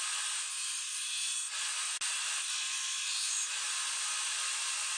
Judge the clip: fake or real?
real